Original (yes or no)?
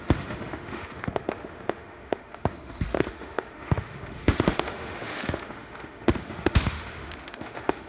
no